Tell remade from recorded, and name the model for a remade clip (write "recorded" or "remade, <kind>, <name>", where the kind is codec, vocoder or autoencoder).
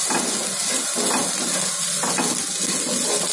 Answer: recorded